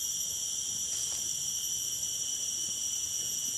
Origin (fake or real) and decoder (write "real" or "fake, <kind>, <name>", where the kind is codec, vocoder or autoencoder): real